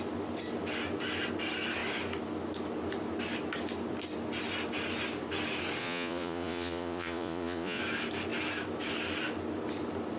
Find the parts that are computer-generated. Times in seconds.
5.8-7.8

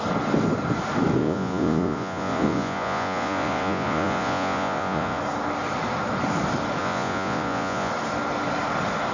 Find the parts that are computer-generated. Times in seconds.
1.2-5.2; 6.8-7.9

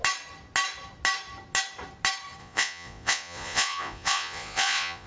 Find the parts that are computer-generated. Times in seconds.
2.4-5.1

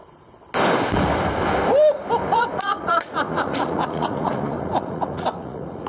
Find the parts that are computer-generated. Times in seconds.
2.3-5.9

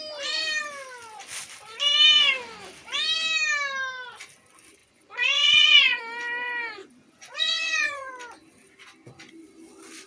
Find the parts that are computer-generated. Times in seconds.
4.8-6.0; 6.8-8.1